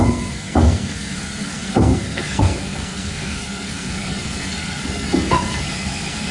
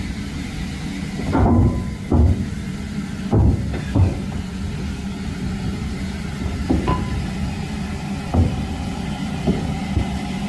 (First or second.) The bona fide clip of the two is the second